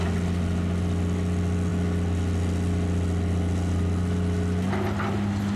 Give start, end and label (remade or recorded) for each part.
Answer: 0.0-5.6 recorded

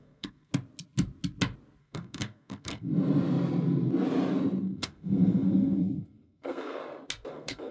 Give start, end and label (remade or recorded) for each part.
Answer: 0.0-0.5 remade; 0.5-1.8 recorded; 1.8-2.9 remade; 2.9-4.6 recorded; 4.6-6.8 remade; 6.8-7.3 recorded; 7.3-7.7 remade

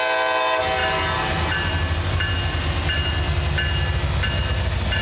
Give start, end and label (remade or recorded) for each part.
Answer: 0.0-5.0 recorded